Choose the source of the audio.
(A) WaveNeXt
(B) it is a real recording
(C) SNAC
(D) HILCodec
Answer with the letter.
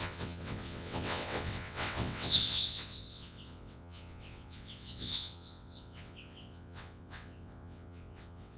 A